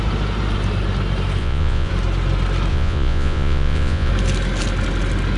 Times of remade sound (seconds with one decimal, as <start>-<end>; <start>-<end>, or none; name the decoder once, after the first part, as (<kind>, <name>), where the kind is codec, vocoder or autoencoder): 1.4-1.9 (vocoder, Vocos); 2.7-4.1